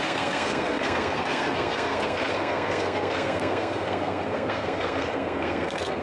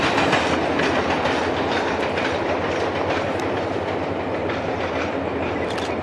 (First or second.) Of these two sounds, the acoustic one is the second